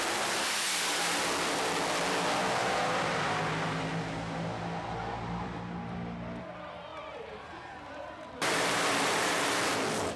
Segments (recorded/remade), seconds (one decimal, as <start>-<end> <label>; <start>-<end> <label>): 0.0-2.6 recorded; 2.6-3.4 remade; 3.4-6.9 recorded; 6.9-9.6 remade; 9.6-10.2 recorded